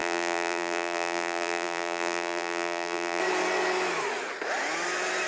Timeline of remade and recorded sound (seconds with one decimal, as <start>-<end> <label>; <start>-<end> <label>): 0.0-3.2 remade; 3.2-5.3 recorded